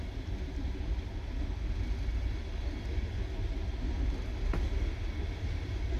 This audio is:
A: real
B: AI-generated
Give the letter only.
A